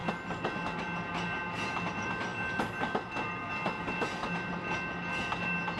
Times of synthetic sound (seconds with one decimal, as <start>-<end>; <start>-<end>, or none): 1.9-2.3

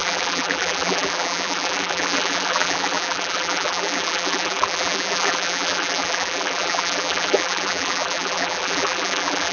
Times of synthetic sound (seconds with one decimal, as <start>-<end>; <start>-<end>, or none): 0.0-9.5

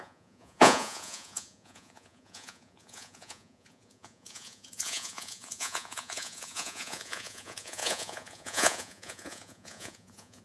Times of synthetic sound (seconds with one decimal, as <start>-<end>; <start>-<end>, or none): 0.0-10.4

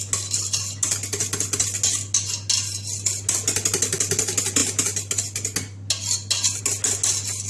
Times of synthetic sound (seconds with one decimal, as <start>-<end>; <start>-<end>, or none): none

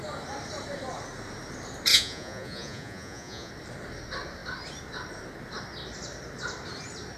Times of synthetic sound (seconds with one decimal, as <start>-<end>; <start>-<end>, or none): 1.9-3.5